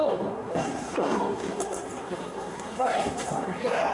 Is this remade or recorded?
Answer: remade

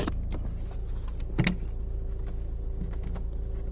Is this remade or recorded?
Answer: recorded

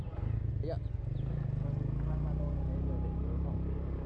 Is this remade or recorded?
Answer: recorded